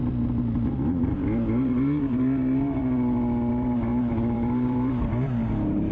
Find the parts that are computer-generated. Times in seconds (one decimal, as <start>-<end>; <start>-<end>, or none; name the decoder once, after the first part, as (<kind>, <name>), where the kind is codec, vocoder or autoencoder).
1.0-2.8 (vocoder, BigVGAN v2); 3.5-5.9